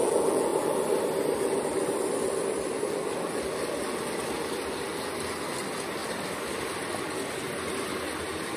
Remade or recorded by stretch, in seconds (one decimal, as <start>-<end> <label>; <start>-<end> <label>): 0.0-0.5 recorded; 0.5-2.9 remade; 2.9-6.0 recorded; 6.0-7.3 remade; 7.3-8.6 recorded